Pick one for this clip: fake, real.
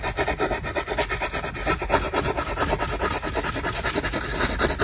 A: real